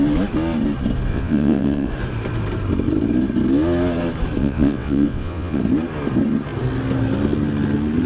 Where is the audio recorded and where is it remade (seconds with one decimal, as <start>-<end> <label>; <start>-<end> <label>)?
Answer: 0.0-1.1 recorded; 1.1-1.9 remade; 1.9-4.4 recorded; 4.4-5.6 remade; 5.6-8.1 recorded